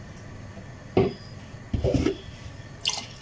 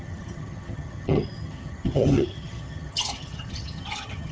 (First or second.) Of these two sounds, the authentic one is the first